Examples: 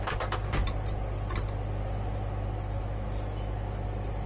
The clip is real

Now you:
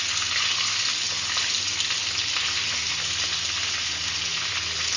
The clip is real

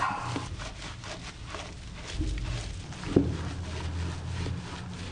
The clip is real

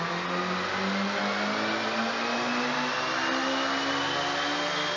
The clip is real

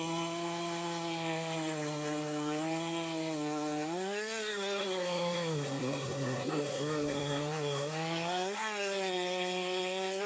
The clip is fake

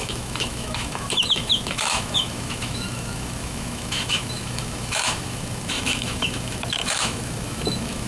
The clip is fake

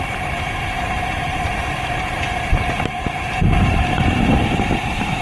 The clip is fake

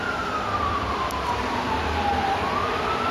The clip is real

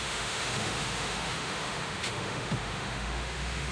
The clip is fake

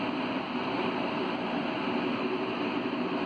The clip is real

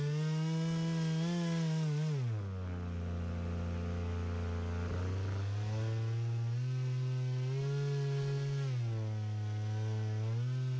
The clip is real